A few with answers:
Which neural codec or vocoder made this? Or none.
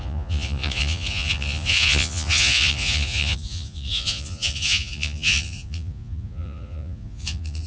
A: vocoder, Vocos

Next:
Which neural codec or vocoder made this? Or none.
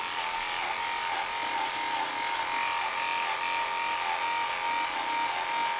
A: none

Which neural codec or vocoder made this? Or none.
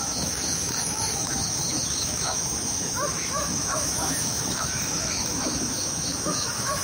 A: autoencoder, DAC-VAE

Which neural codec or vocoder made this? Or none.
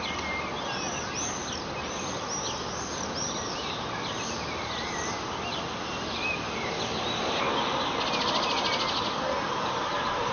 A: none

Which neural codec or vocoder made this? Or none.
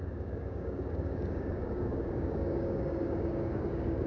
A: codec, DAC